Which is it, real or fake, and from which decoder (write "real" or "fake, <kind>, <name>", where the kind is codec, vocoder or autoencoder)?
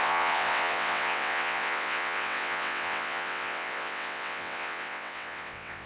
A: fake, vocoder, WaveNeXt